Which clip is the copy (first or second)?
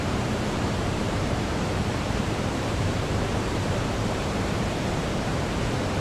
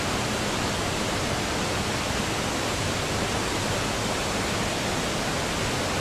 first